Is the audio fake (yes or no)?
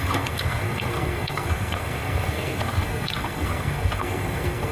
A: yes